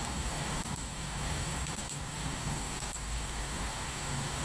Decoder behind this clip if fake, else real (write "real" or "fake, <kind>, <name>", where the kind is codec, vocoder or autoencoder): fake, codec, DAC